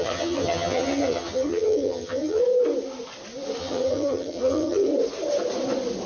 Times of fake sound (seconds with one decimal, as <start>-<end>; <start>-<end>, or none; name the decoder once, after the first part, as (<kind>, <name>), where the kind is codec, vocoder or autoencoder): 0.0-2.4 (vocoder, HiFi-GAN); 3.6-4.9